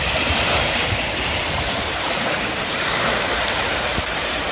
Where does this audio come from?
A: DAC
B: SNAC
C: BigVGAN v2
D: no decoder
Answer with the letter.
C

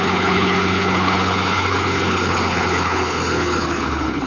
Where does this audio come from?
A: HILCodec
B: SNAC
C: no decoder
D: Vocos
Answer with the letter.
A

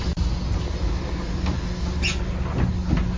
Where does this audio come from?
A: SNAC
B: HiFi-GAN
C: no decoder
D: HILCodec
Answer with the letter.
C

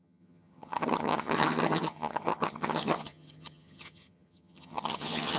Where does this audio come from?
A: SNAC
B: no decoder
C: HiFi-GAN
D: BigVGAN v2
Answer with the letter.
C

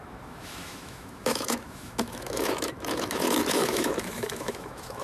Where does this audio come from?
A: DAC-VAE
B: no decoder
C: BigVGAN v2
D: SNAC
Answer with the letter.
A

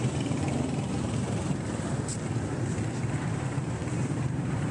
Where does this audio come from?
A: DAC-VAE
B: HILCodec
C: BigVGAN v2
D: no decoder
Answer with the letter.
C